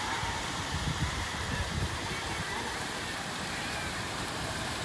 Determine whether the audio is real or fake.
fake